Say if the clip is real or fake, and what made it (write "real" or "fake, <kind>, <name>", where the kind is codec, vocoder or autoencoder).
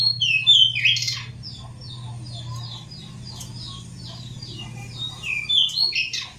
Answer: real